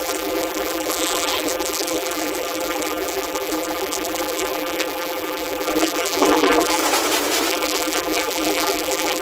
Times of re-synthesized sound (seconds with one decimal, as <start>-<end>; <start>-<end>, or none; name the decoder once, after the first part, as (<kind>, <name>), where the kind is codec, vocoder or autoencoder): 0.0-6.8 (vocoder, BigVGAN v2); 7.5-9.2